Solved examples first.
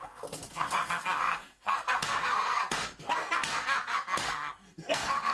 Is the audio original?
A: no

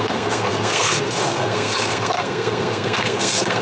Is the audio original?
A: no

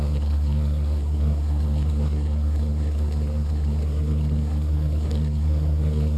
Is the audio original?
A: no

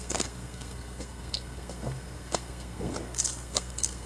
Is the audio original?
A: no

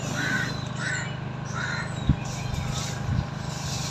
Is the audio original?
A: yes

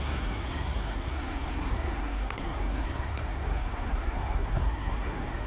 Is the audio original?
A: no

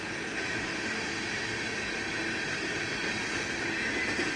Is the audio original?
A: yes